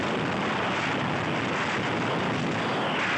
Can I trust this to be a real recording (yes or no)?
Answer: yes